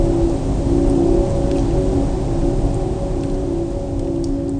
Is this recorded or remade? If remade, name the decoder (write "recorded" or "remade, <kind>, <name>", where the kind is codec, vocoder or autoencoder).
recorded